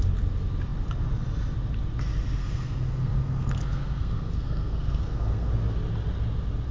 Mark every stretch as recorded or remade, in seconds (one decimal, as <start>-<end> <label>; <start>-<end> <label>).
0.0-2.4 recorded; 2.4-5.5 remade; 5.5-6.7 recorded